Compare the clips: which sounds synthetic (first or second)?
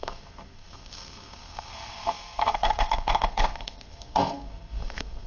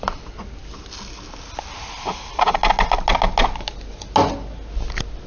first